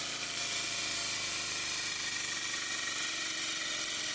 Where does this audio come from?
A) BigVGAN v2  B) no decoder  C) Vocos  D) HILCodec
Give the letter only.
B